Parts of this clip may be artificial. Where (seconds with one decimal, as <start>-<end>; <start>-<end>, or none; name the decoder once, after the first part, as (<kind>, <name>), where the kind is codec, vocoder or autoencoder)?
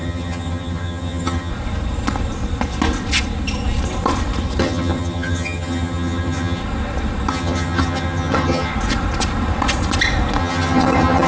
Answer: 0.0-1.5 (vocoder, HiFi-GAN); 4.6-6.6; 7.3-8.7; 10.4-11.3